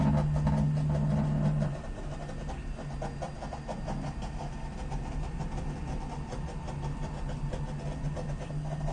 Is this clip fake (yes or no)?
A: no